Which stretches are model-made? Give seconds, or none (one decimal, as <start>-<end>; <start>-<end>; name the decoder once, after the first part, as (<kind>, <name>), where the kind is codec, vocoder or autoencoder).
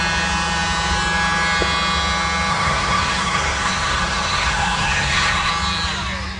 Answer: 2.5-5.5 (codec, SNAC)